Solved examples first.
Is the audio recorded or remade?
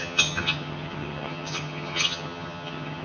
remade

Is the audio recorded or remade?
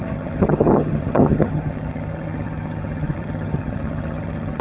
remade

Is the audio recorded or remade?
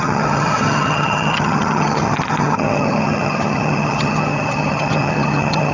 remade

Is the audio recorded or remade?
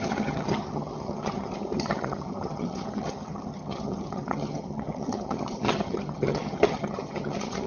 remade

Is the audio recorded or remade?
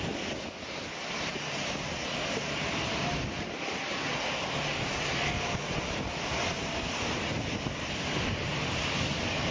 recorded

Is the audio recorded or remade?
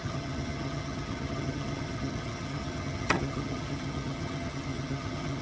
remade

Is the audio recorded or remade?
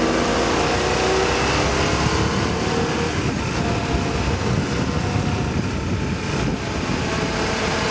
recorded